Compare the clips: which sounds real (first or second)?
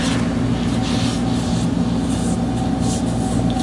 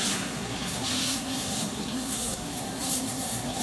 first